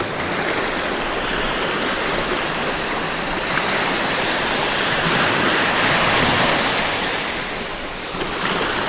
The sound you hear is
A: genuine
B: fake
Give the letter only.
A